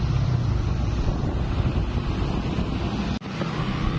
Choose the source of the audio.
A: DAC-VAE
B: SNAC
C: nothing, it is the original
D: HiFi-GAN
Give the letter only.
C